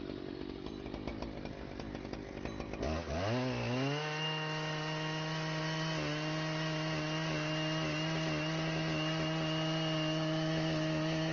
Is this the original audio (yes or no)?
yes